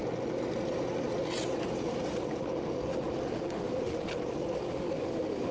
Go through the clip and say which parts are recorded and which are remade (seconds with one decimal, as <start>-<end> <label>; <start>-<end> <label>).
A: 0.0-3.3 recorded; 3.3-4.1 remade; 4.1-4.7 recorded; 4.7-5.5 remade